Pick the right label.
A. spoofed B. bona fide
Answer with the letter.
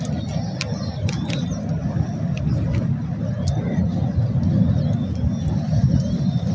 B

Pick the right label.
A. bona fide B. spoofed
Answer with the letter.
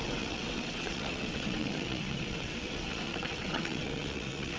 B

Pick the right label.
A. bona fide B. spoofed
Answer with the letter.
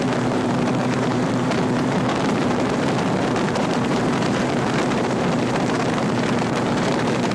B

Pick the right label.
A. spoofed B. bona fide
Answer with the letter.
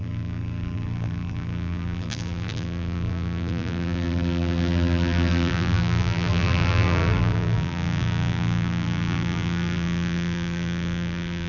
A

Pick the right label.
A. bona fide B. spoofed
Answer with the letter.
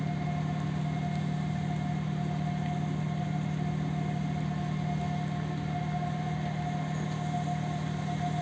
A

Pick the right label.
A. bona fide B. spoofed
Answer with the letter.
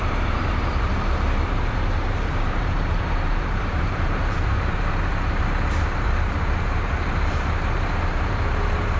B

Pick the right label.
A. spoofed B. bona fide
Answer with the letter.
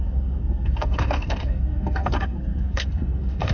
A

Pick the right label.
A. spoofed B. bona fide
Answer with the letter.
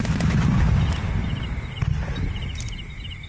B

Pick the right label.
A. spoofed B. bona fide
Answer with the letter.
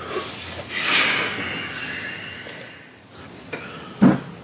B